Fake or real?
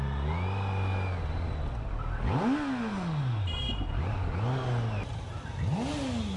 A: real